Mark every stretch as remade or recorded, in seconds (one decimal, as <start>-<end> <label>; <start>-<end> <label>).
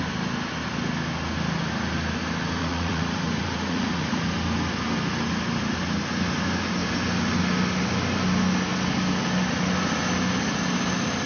0.0-2.6 recorded; 2.6-4.2 remade; 4.2-11.3 recorded